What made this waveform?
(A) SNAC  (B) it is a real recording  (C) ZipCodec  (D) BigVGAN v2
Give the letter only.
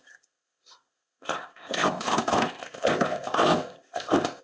C